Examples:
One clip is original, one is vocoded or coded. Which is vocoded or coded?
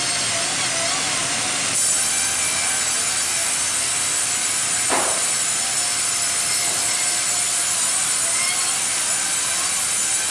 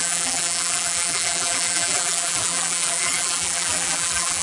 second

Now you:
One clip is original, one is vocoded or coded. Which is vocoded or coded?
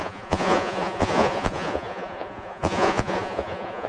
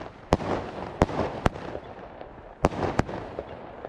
first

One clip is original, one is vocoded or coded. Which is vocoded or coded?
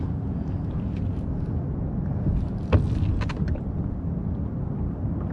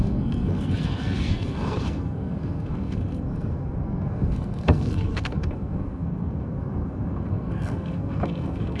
second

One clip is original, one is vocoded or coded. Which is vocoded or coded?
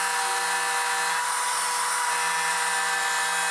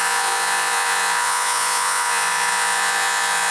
second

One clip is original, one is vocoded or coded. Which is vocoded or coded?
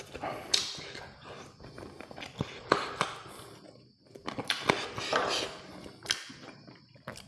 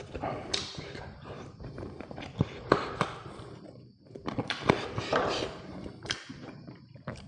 second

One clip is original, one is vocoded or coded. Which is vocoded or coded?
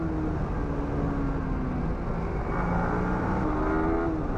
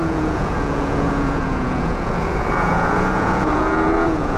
second